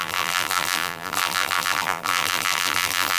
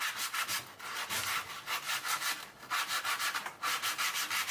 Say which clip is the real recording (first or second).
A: second